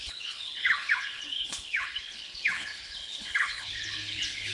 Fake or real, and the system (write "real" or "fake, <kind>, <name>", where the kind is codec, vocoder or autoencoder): fake, codec, HILCodec